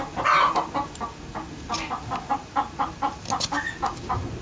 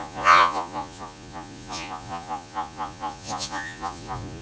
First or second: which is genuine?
first